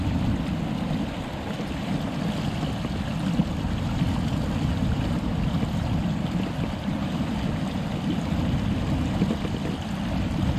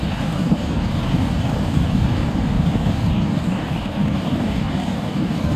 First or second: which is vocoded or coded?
second